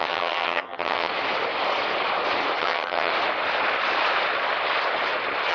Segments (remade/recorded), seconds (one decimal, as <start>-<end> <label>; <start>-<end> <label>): 0.0-1.1 remade; 1.1-2.6 recorded; 2.6-3.1 remade; 3.1-5.5 recorded